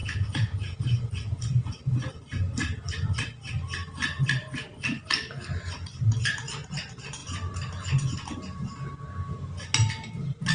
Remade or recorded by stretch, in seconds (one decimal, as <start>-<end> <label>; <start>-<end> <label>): 0.0-0.8 remade; 0.8-10.5 recorded